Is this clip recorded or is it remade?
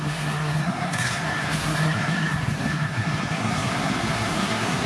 remade